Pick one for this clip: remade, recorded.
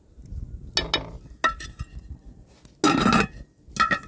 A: recorded